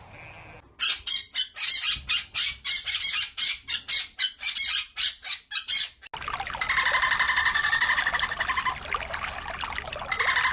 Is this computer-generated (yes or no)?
no